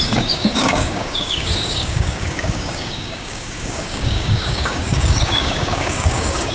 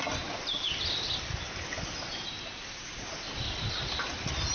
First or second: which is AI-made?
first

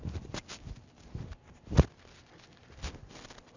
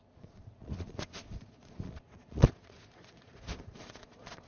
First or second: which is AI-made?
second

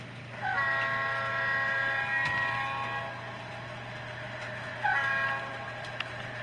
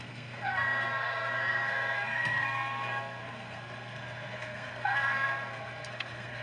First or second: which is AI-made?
second